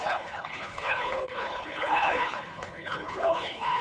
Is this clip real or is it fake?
fake